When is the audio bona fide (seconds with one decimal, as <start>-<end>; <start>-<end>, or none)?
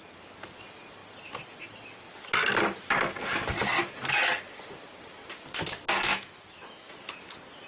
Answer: 0.0-6.1; 6.9-7.7